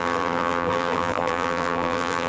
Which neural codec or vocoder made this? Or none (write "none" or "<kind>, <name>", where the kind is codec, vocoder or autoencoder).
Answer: vocoder, BigVGAN v2